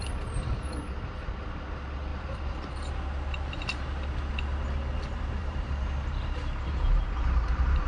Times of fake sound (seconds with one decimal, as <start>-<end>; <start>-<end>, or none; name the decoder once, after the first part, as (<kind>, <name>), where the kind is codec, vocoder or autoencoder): 2.1-2.7 (vocoder, BigVGAN v2); 5.4-7.9